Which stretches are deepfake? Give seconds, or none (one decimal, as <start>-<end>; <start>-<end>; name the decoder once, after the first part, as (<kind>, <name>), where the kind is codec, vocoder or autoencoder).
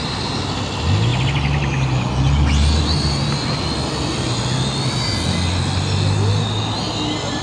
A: none